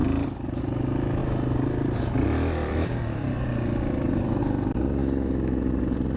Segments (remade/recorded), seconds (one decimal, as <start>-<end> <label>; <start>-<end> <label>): 0.0-5.0 recorded; 5.0-5.7 remade; 5.7-6.2 recorded